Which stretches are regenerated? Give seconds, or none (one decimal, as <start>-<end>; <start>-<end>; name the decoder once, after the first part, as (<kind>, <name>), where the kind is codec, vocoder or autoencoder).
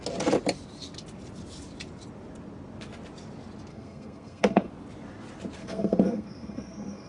3.7-4.7 (codec, SNAC); 5.6-7.1